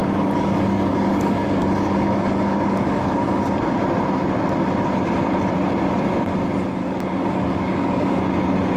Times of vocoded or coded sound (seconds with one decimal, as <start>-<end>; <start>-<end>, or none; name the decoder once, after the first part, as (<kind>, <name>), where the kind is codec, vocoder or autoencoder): 0.0-3.4 (codec, DAC); 6.8-8.2